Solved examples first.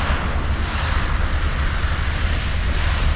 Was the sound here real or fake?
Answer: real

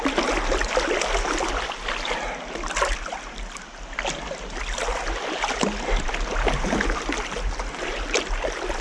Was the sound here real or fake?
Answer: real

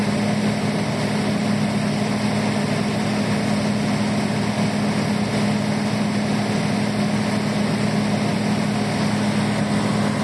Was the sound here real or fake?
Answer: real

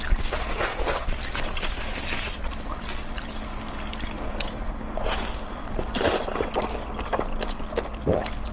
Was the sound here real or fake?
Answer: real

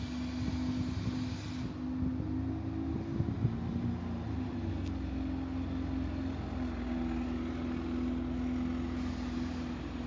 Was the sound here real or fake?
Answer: real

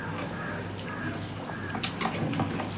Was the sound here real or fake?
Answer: real